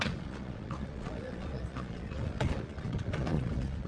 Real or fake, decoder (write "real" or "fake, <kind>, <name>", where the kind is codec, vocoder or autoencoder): fake, vocoder, Vocos